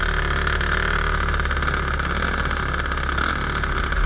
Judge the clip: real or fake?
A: real